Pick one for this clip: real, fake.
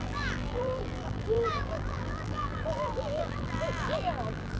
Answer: fake